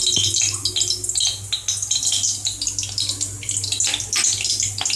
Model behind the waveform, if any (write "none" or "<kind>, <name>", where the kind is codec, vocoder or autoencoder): none